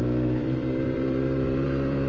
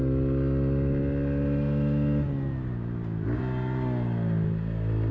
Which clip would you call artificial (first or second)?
first